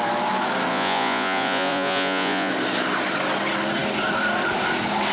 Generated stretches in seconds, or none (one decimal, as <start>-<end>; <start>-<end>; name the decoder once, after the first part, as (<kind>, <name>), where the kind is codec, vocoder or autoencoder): 0.7-2.5 (vocoder, Vocos)